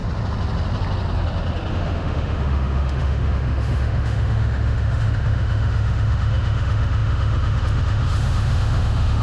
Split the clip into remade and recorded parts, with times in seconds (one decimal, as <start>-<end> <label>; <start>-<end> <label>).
0.0-1.7 recorded; 1.7-9.2 remade